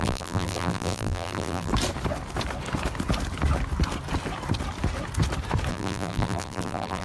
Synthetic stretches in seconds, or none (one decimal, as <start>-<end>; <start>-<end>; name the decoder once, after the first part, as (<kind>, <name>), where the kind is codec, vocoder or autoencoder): 0.0-1.7 (vocoder, BigVGAN v2); 5.7-7.0